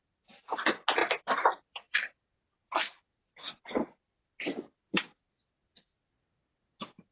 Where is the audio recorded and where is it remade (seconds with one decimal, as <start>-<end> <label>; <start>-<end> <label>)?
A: 0.0-1.0 recorded; 1.0-3.1 remade; 3.1-7.1 recorded